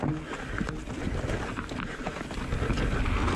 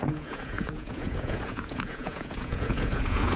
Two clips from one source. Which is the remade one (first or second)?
second